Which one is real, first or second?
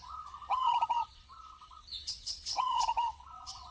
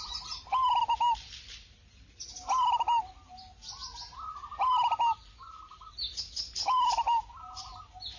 second